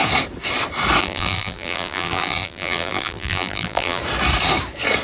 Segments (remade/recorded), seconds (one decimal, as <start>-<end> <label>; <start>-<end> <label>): 0.0-1.0 recorded; 1.0-4.0 remade; 4.0-5.0 recorded